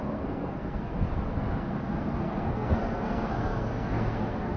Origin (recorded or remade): remade